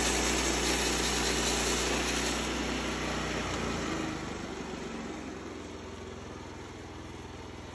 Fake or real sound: real